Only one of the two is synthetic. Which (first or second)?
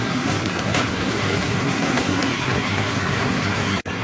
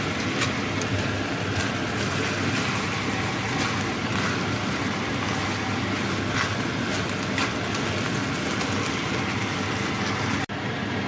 first